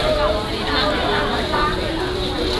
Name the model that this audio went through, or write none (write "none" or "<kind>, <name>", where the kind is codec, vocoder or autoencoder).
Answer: none